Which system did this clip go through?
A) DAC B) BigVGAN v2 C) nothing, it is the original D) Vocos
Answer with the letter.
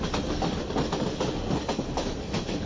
C